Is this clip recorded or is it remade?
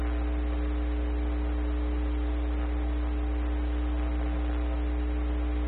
recorded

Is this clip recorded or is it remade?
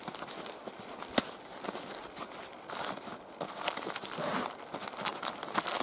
recorded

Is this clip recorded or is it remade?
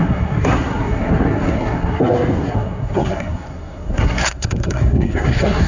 remade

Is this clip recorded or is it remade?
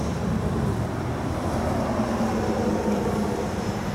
recorded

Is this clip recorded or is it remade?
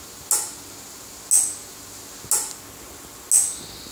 recorded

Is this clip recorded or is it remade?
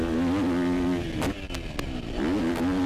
recorded